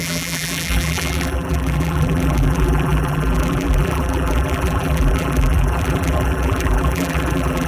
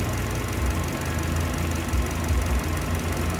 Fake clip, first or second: first